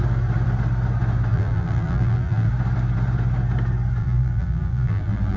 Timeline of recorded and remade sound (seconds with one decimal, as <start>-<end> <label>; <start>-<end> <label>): 0.0-1.3 recorded; 1.3-2.5 remade; 2.5-4.0 recorded; 4.0-5.4 remade